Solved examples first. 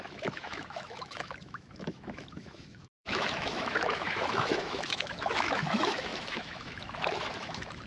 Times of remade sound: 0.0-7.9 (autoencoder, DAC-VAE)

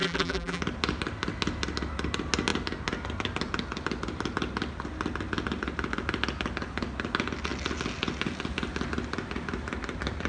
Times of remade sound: 0.0-0.6 (vocoder, BigVGAN v2)

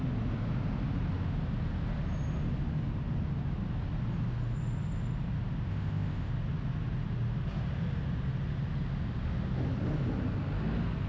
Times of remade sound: 5.7-6.3 (codec, ZipCodec)

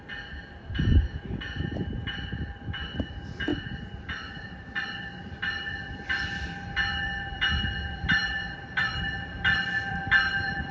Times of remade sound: 0.0-10.7 (vocoder, BigVGAN v2)